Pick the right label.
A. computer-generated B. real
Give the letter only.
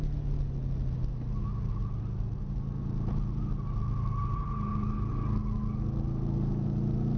B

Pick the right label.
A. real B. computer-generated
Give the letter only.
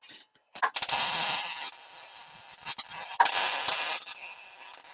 A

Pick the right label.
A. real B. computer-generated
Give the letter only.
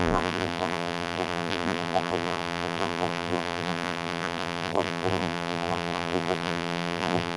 B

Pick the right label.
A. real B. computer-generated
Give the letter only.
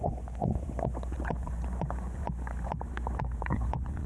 B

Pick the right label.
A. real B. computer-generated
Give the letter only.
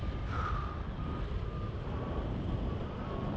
A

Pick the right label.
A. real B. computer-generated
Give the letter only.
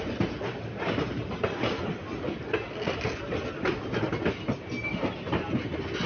A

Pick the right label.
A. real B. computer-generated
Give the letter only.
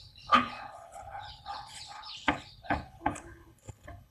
B